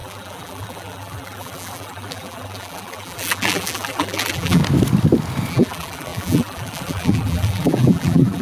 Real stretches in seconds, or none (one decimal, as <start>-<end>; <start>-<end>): 4.6-5.5